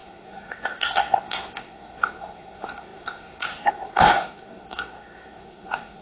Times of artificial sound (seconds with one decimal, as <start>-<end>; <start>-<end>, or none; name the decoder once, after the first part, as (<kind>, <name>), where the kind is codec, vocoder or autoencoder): 0.0-6.0 (codec, SNAC)